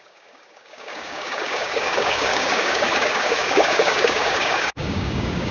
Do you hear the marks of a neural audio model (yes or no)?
yes